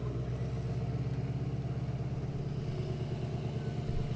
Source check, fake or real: real